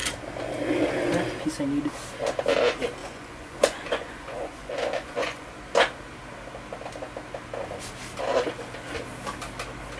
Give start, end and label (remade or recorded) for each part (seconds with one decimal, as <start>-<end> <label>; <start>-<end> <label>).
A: 0.0-3.0 recorded; 3.0-5.5 remade; 5.5-10.0 recorded